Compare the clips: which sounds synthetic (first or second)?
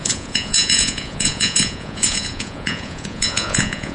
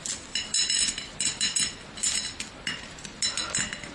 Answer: first